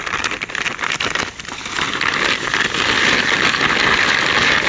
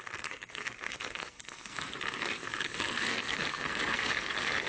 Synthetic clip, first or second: second